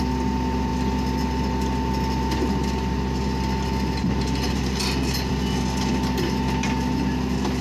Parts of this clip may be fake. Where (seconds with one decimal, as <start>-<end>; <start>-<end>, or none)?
none